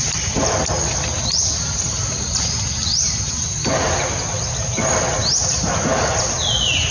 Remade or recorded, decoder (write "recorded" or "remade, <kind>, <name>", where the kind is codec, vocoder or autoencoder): recorded